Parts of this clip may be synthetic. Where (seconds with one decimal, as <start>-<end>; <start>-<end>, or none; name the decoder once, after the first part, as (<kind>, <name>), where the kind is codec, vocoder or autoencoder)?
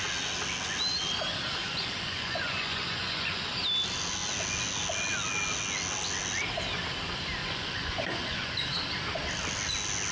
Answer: 1.6-3.4 (vocoder, Vocos); 7.4-8.5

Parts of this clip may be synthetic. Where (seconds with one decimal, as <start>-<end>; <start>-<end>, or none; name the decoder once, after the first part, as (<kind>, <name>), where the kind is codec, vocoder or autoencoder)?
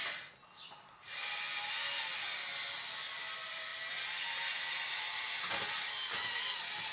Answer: none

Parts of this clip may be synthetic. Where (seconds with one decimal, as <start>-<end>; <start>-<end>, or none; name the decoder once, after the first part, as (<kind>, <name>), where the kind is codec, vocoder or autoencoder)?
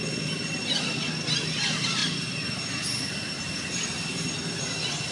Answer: none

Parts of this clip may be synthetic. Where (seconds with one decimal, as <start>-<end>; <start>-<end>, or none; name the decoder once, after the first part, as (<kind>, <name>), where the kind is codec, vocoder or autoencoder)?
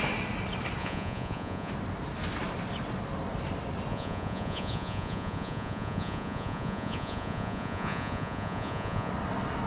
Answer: 0.8-1.7 (vocoder, Vocos); 3.9-9.1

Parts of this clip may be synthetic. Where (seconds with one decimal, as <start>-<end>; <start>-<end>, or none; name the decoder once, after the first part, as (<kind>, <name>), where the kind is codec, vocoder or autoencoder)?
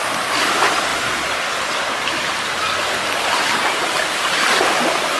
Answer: none